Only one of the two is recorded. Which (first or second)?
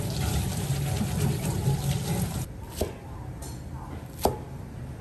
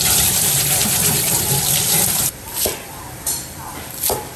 first